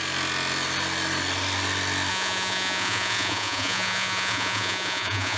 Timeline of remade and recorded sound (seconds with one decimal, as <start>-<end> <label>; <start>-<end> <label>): 0.0-2.1 recorded; 2.1-5.4 remade